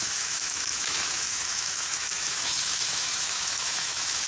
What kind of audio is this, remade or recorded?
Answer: remade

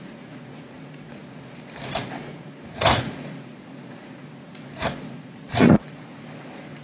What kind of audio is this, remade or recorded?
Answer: remade